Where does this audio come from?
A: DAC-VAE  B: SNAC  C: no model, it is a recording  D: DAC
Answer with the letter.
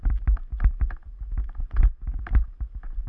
C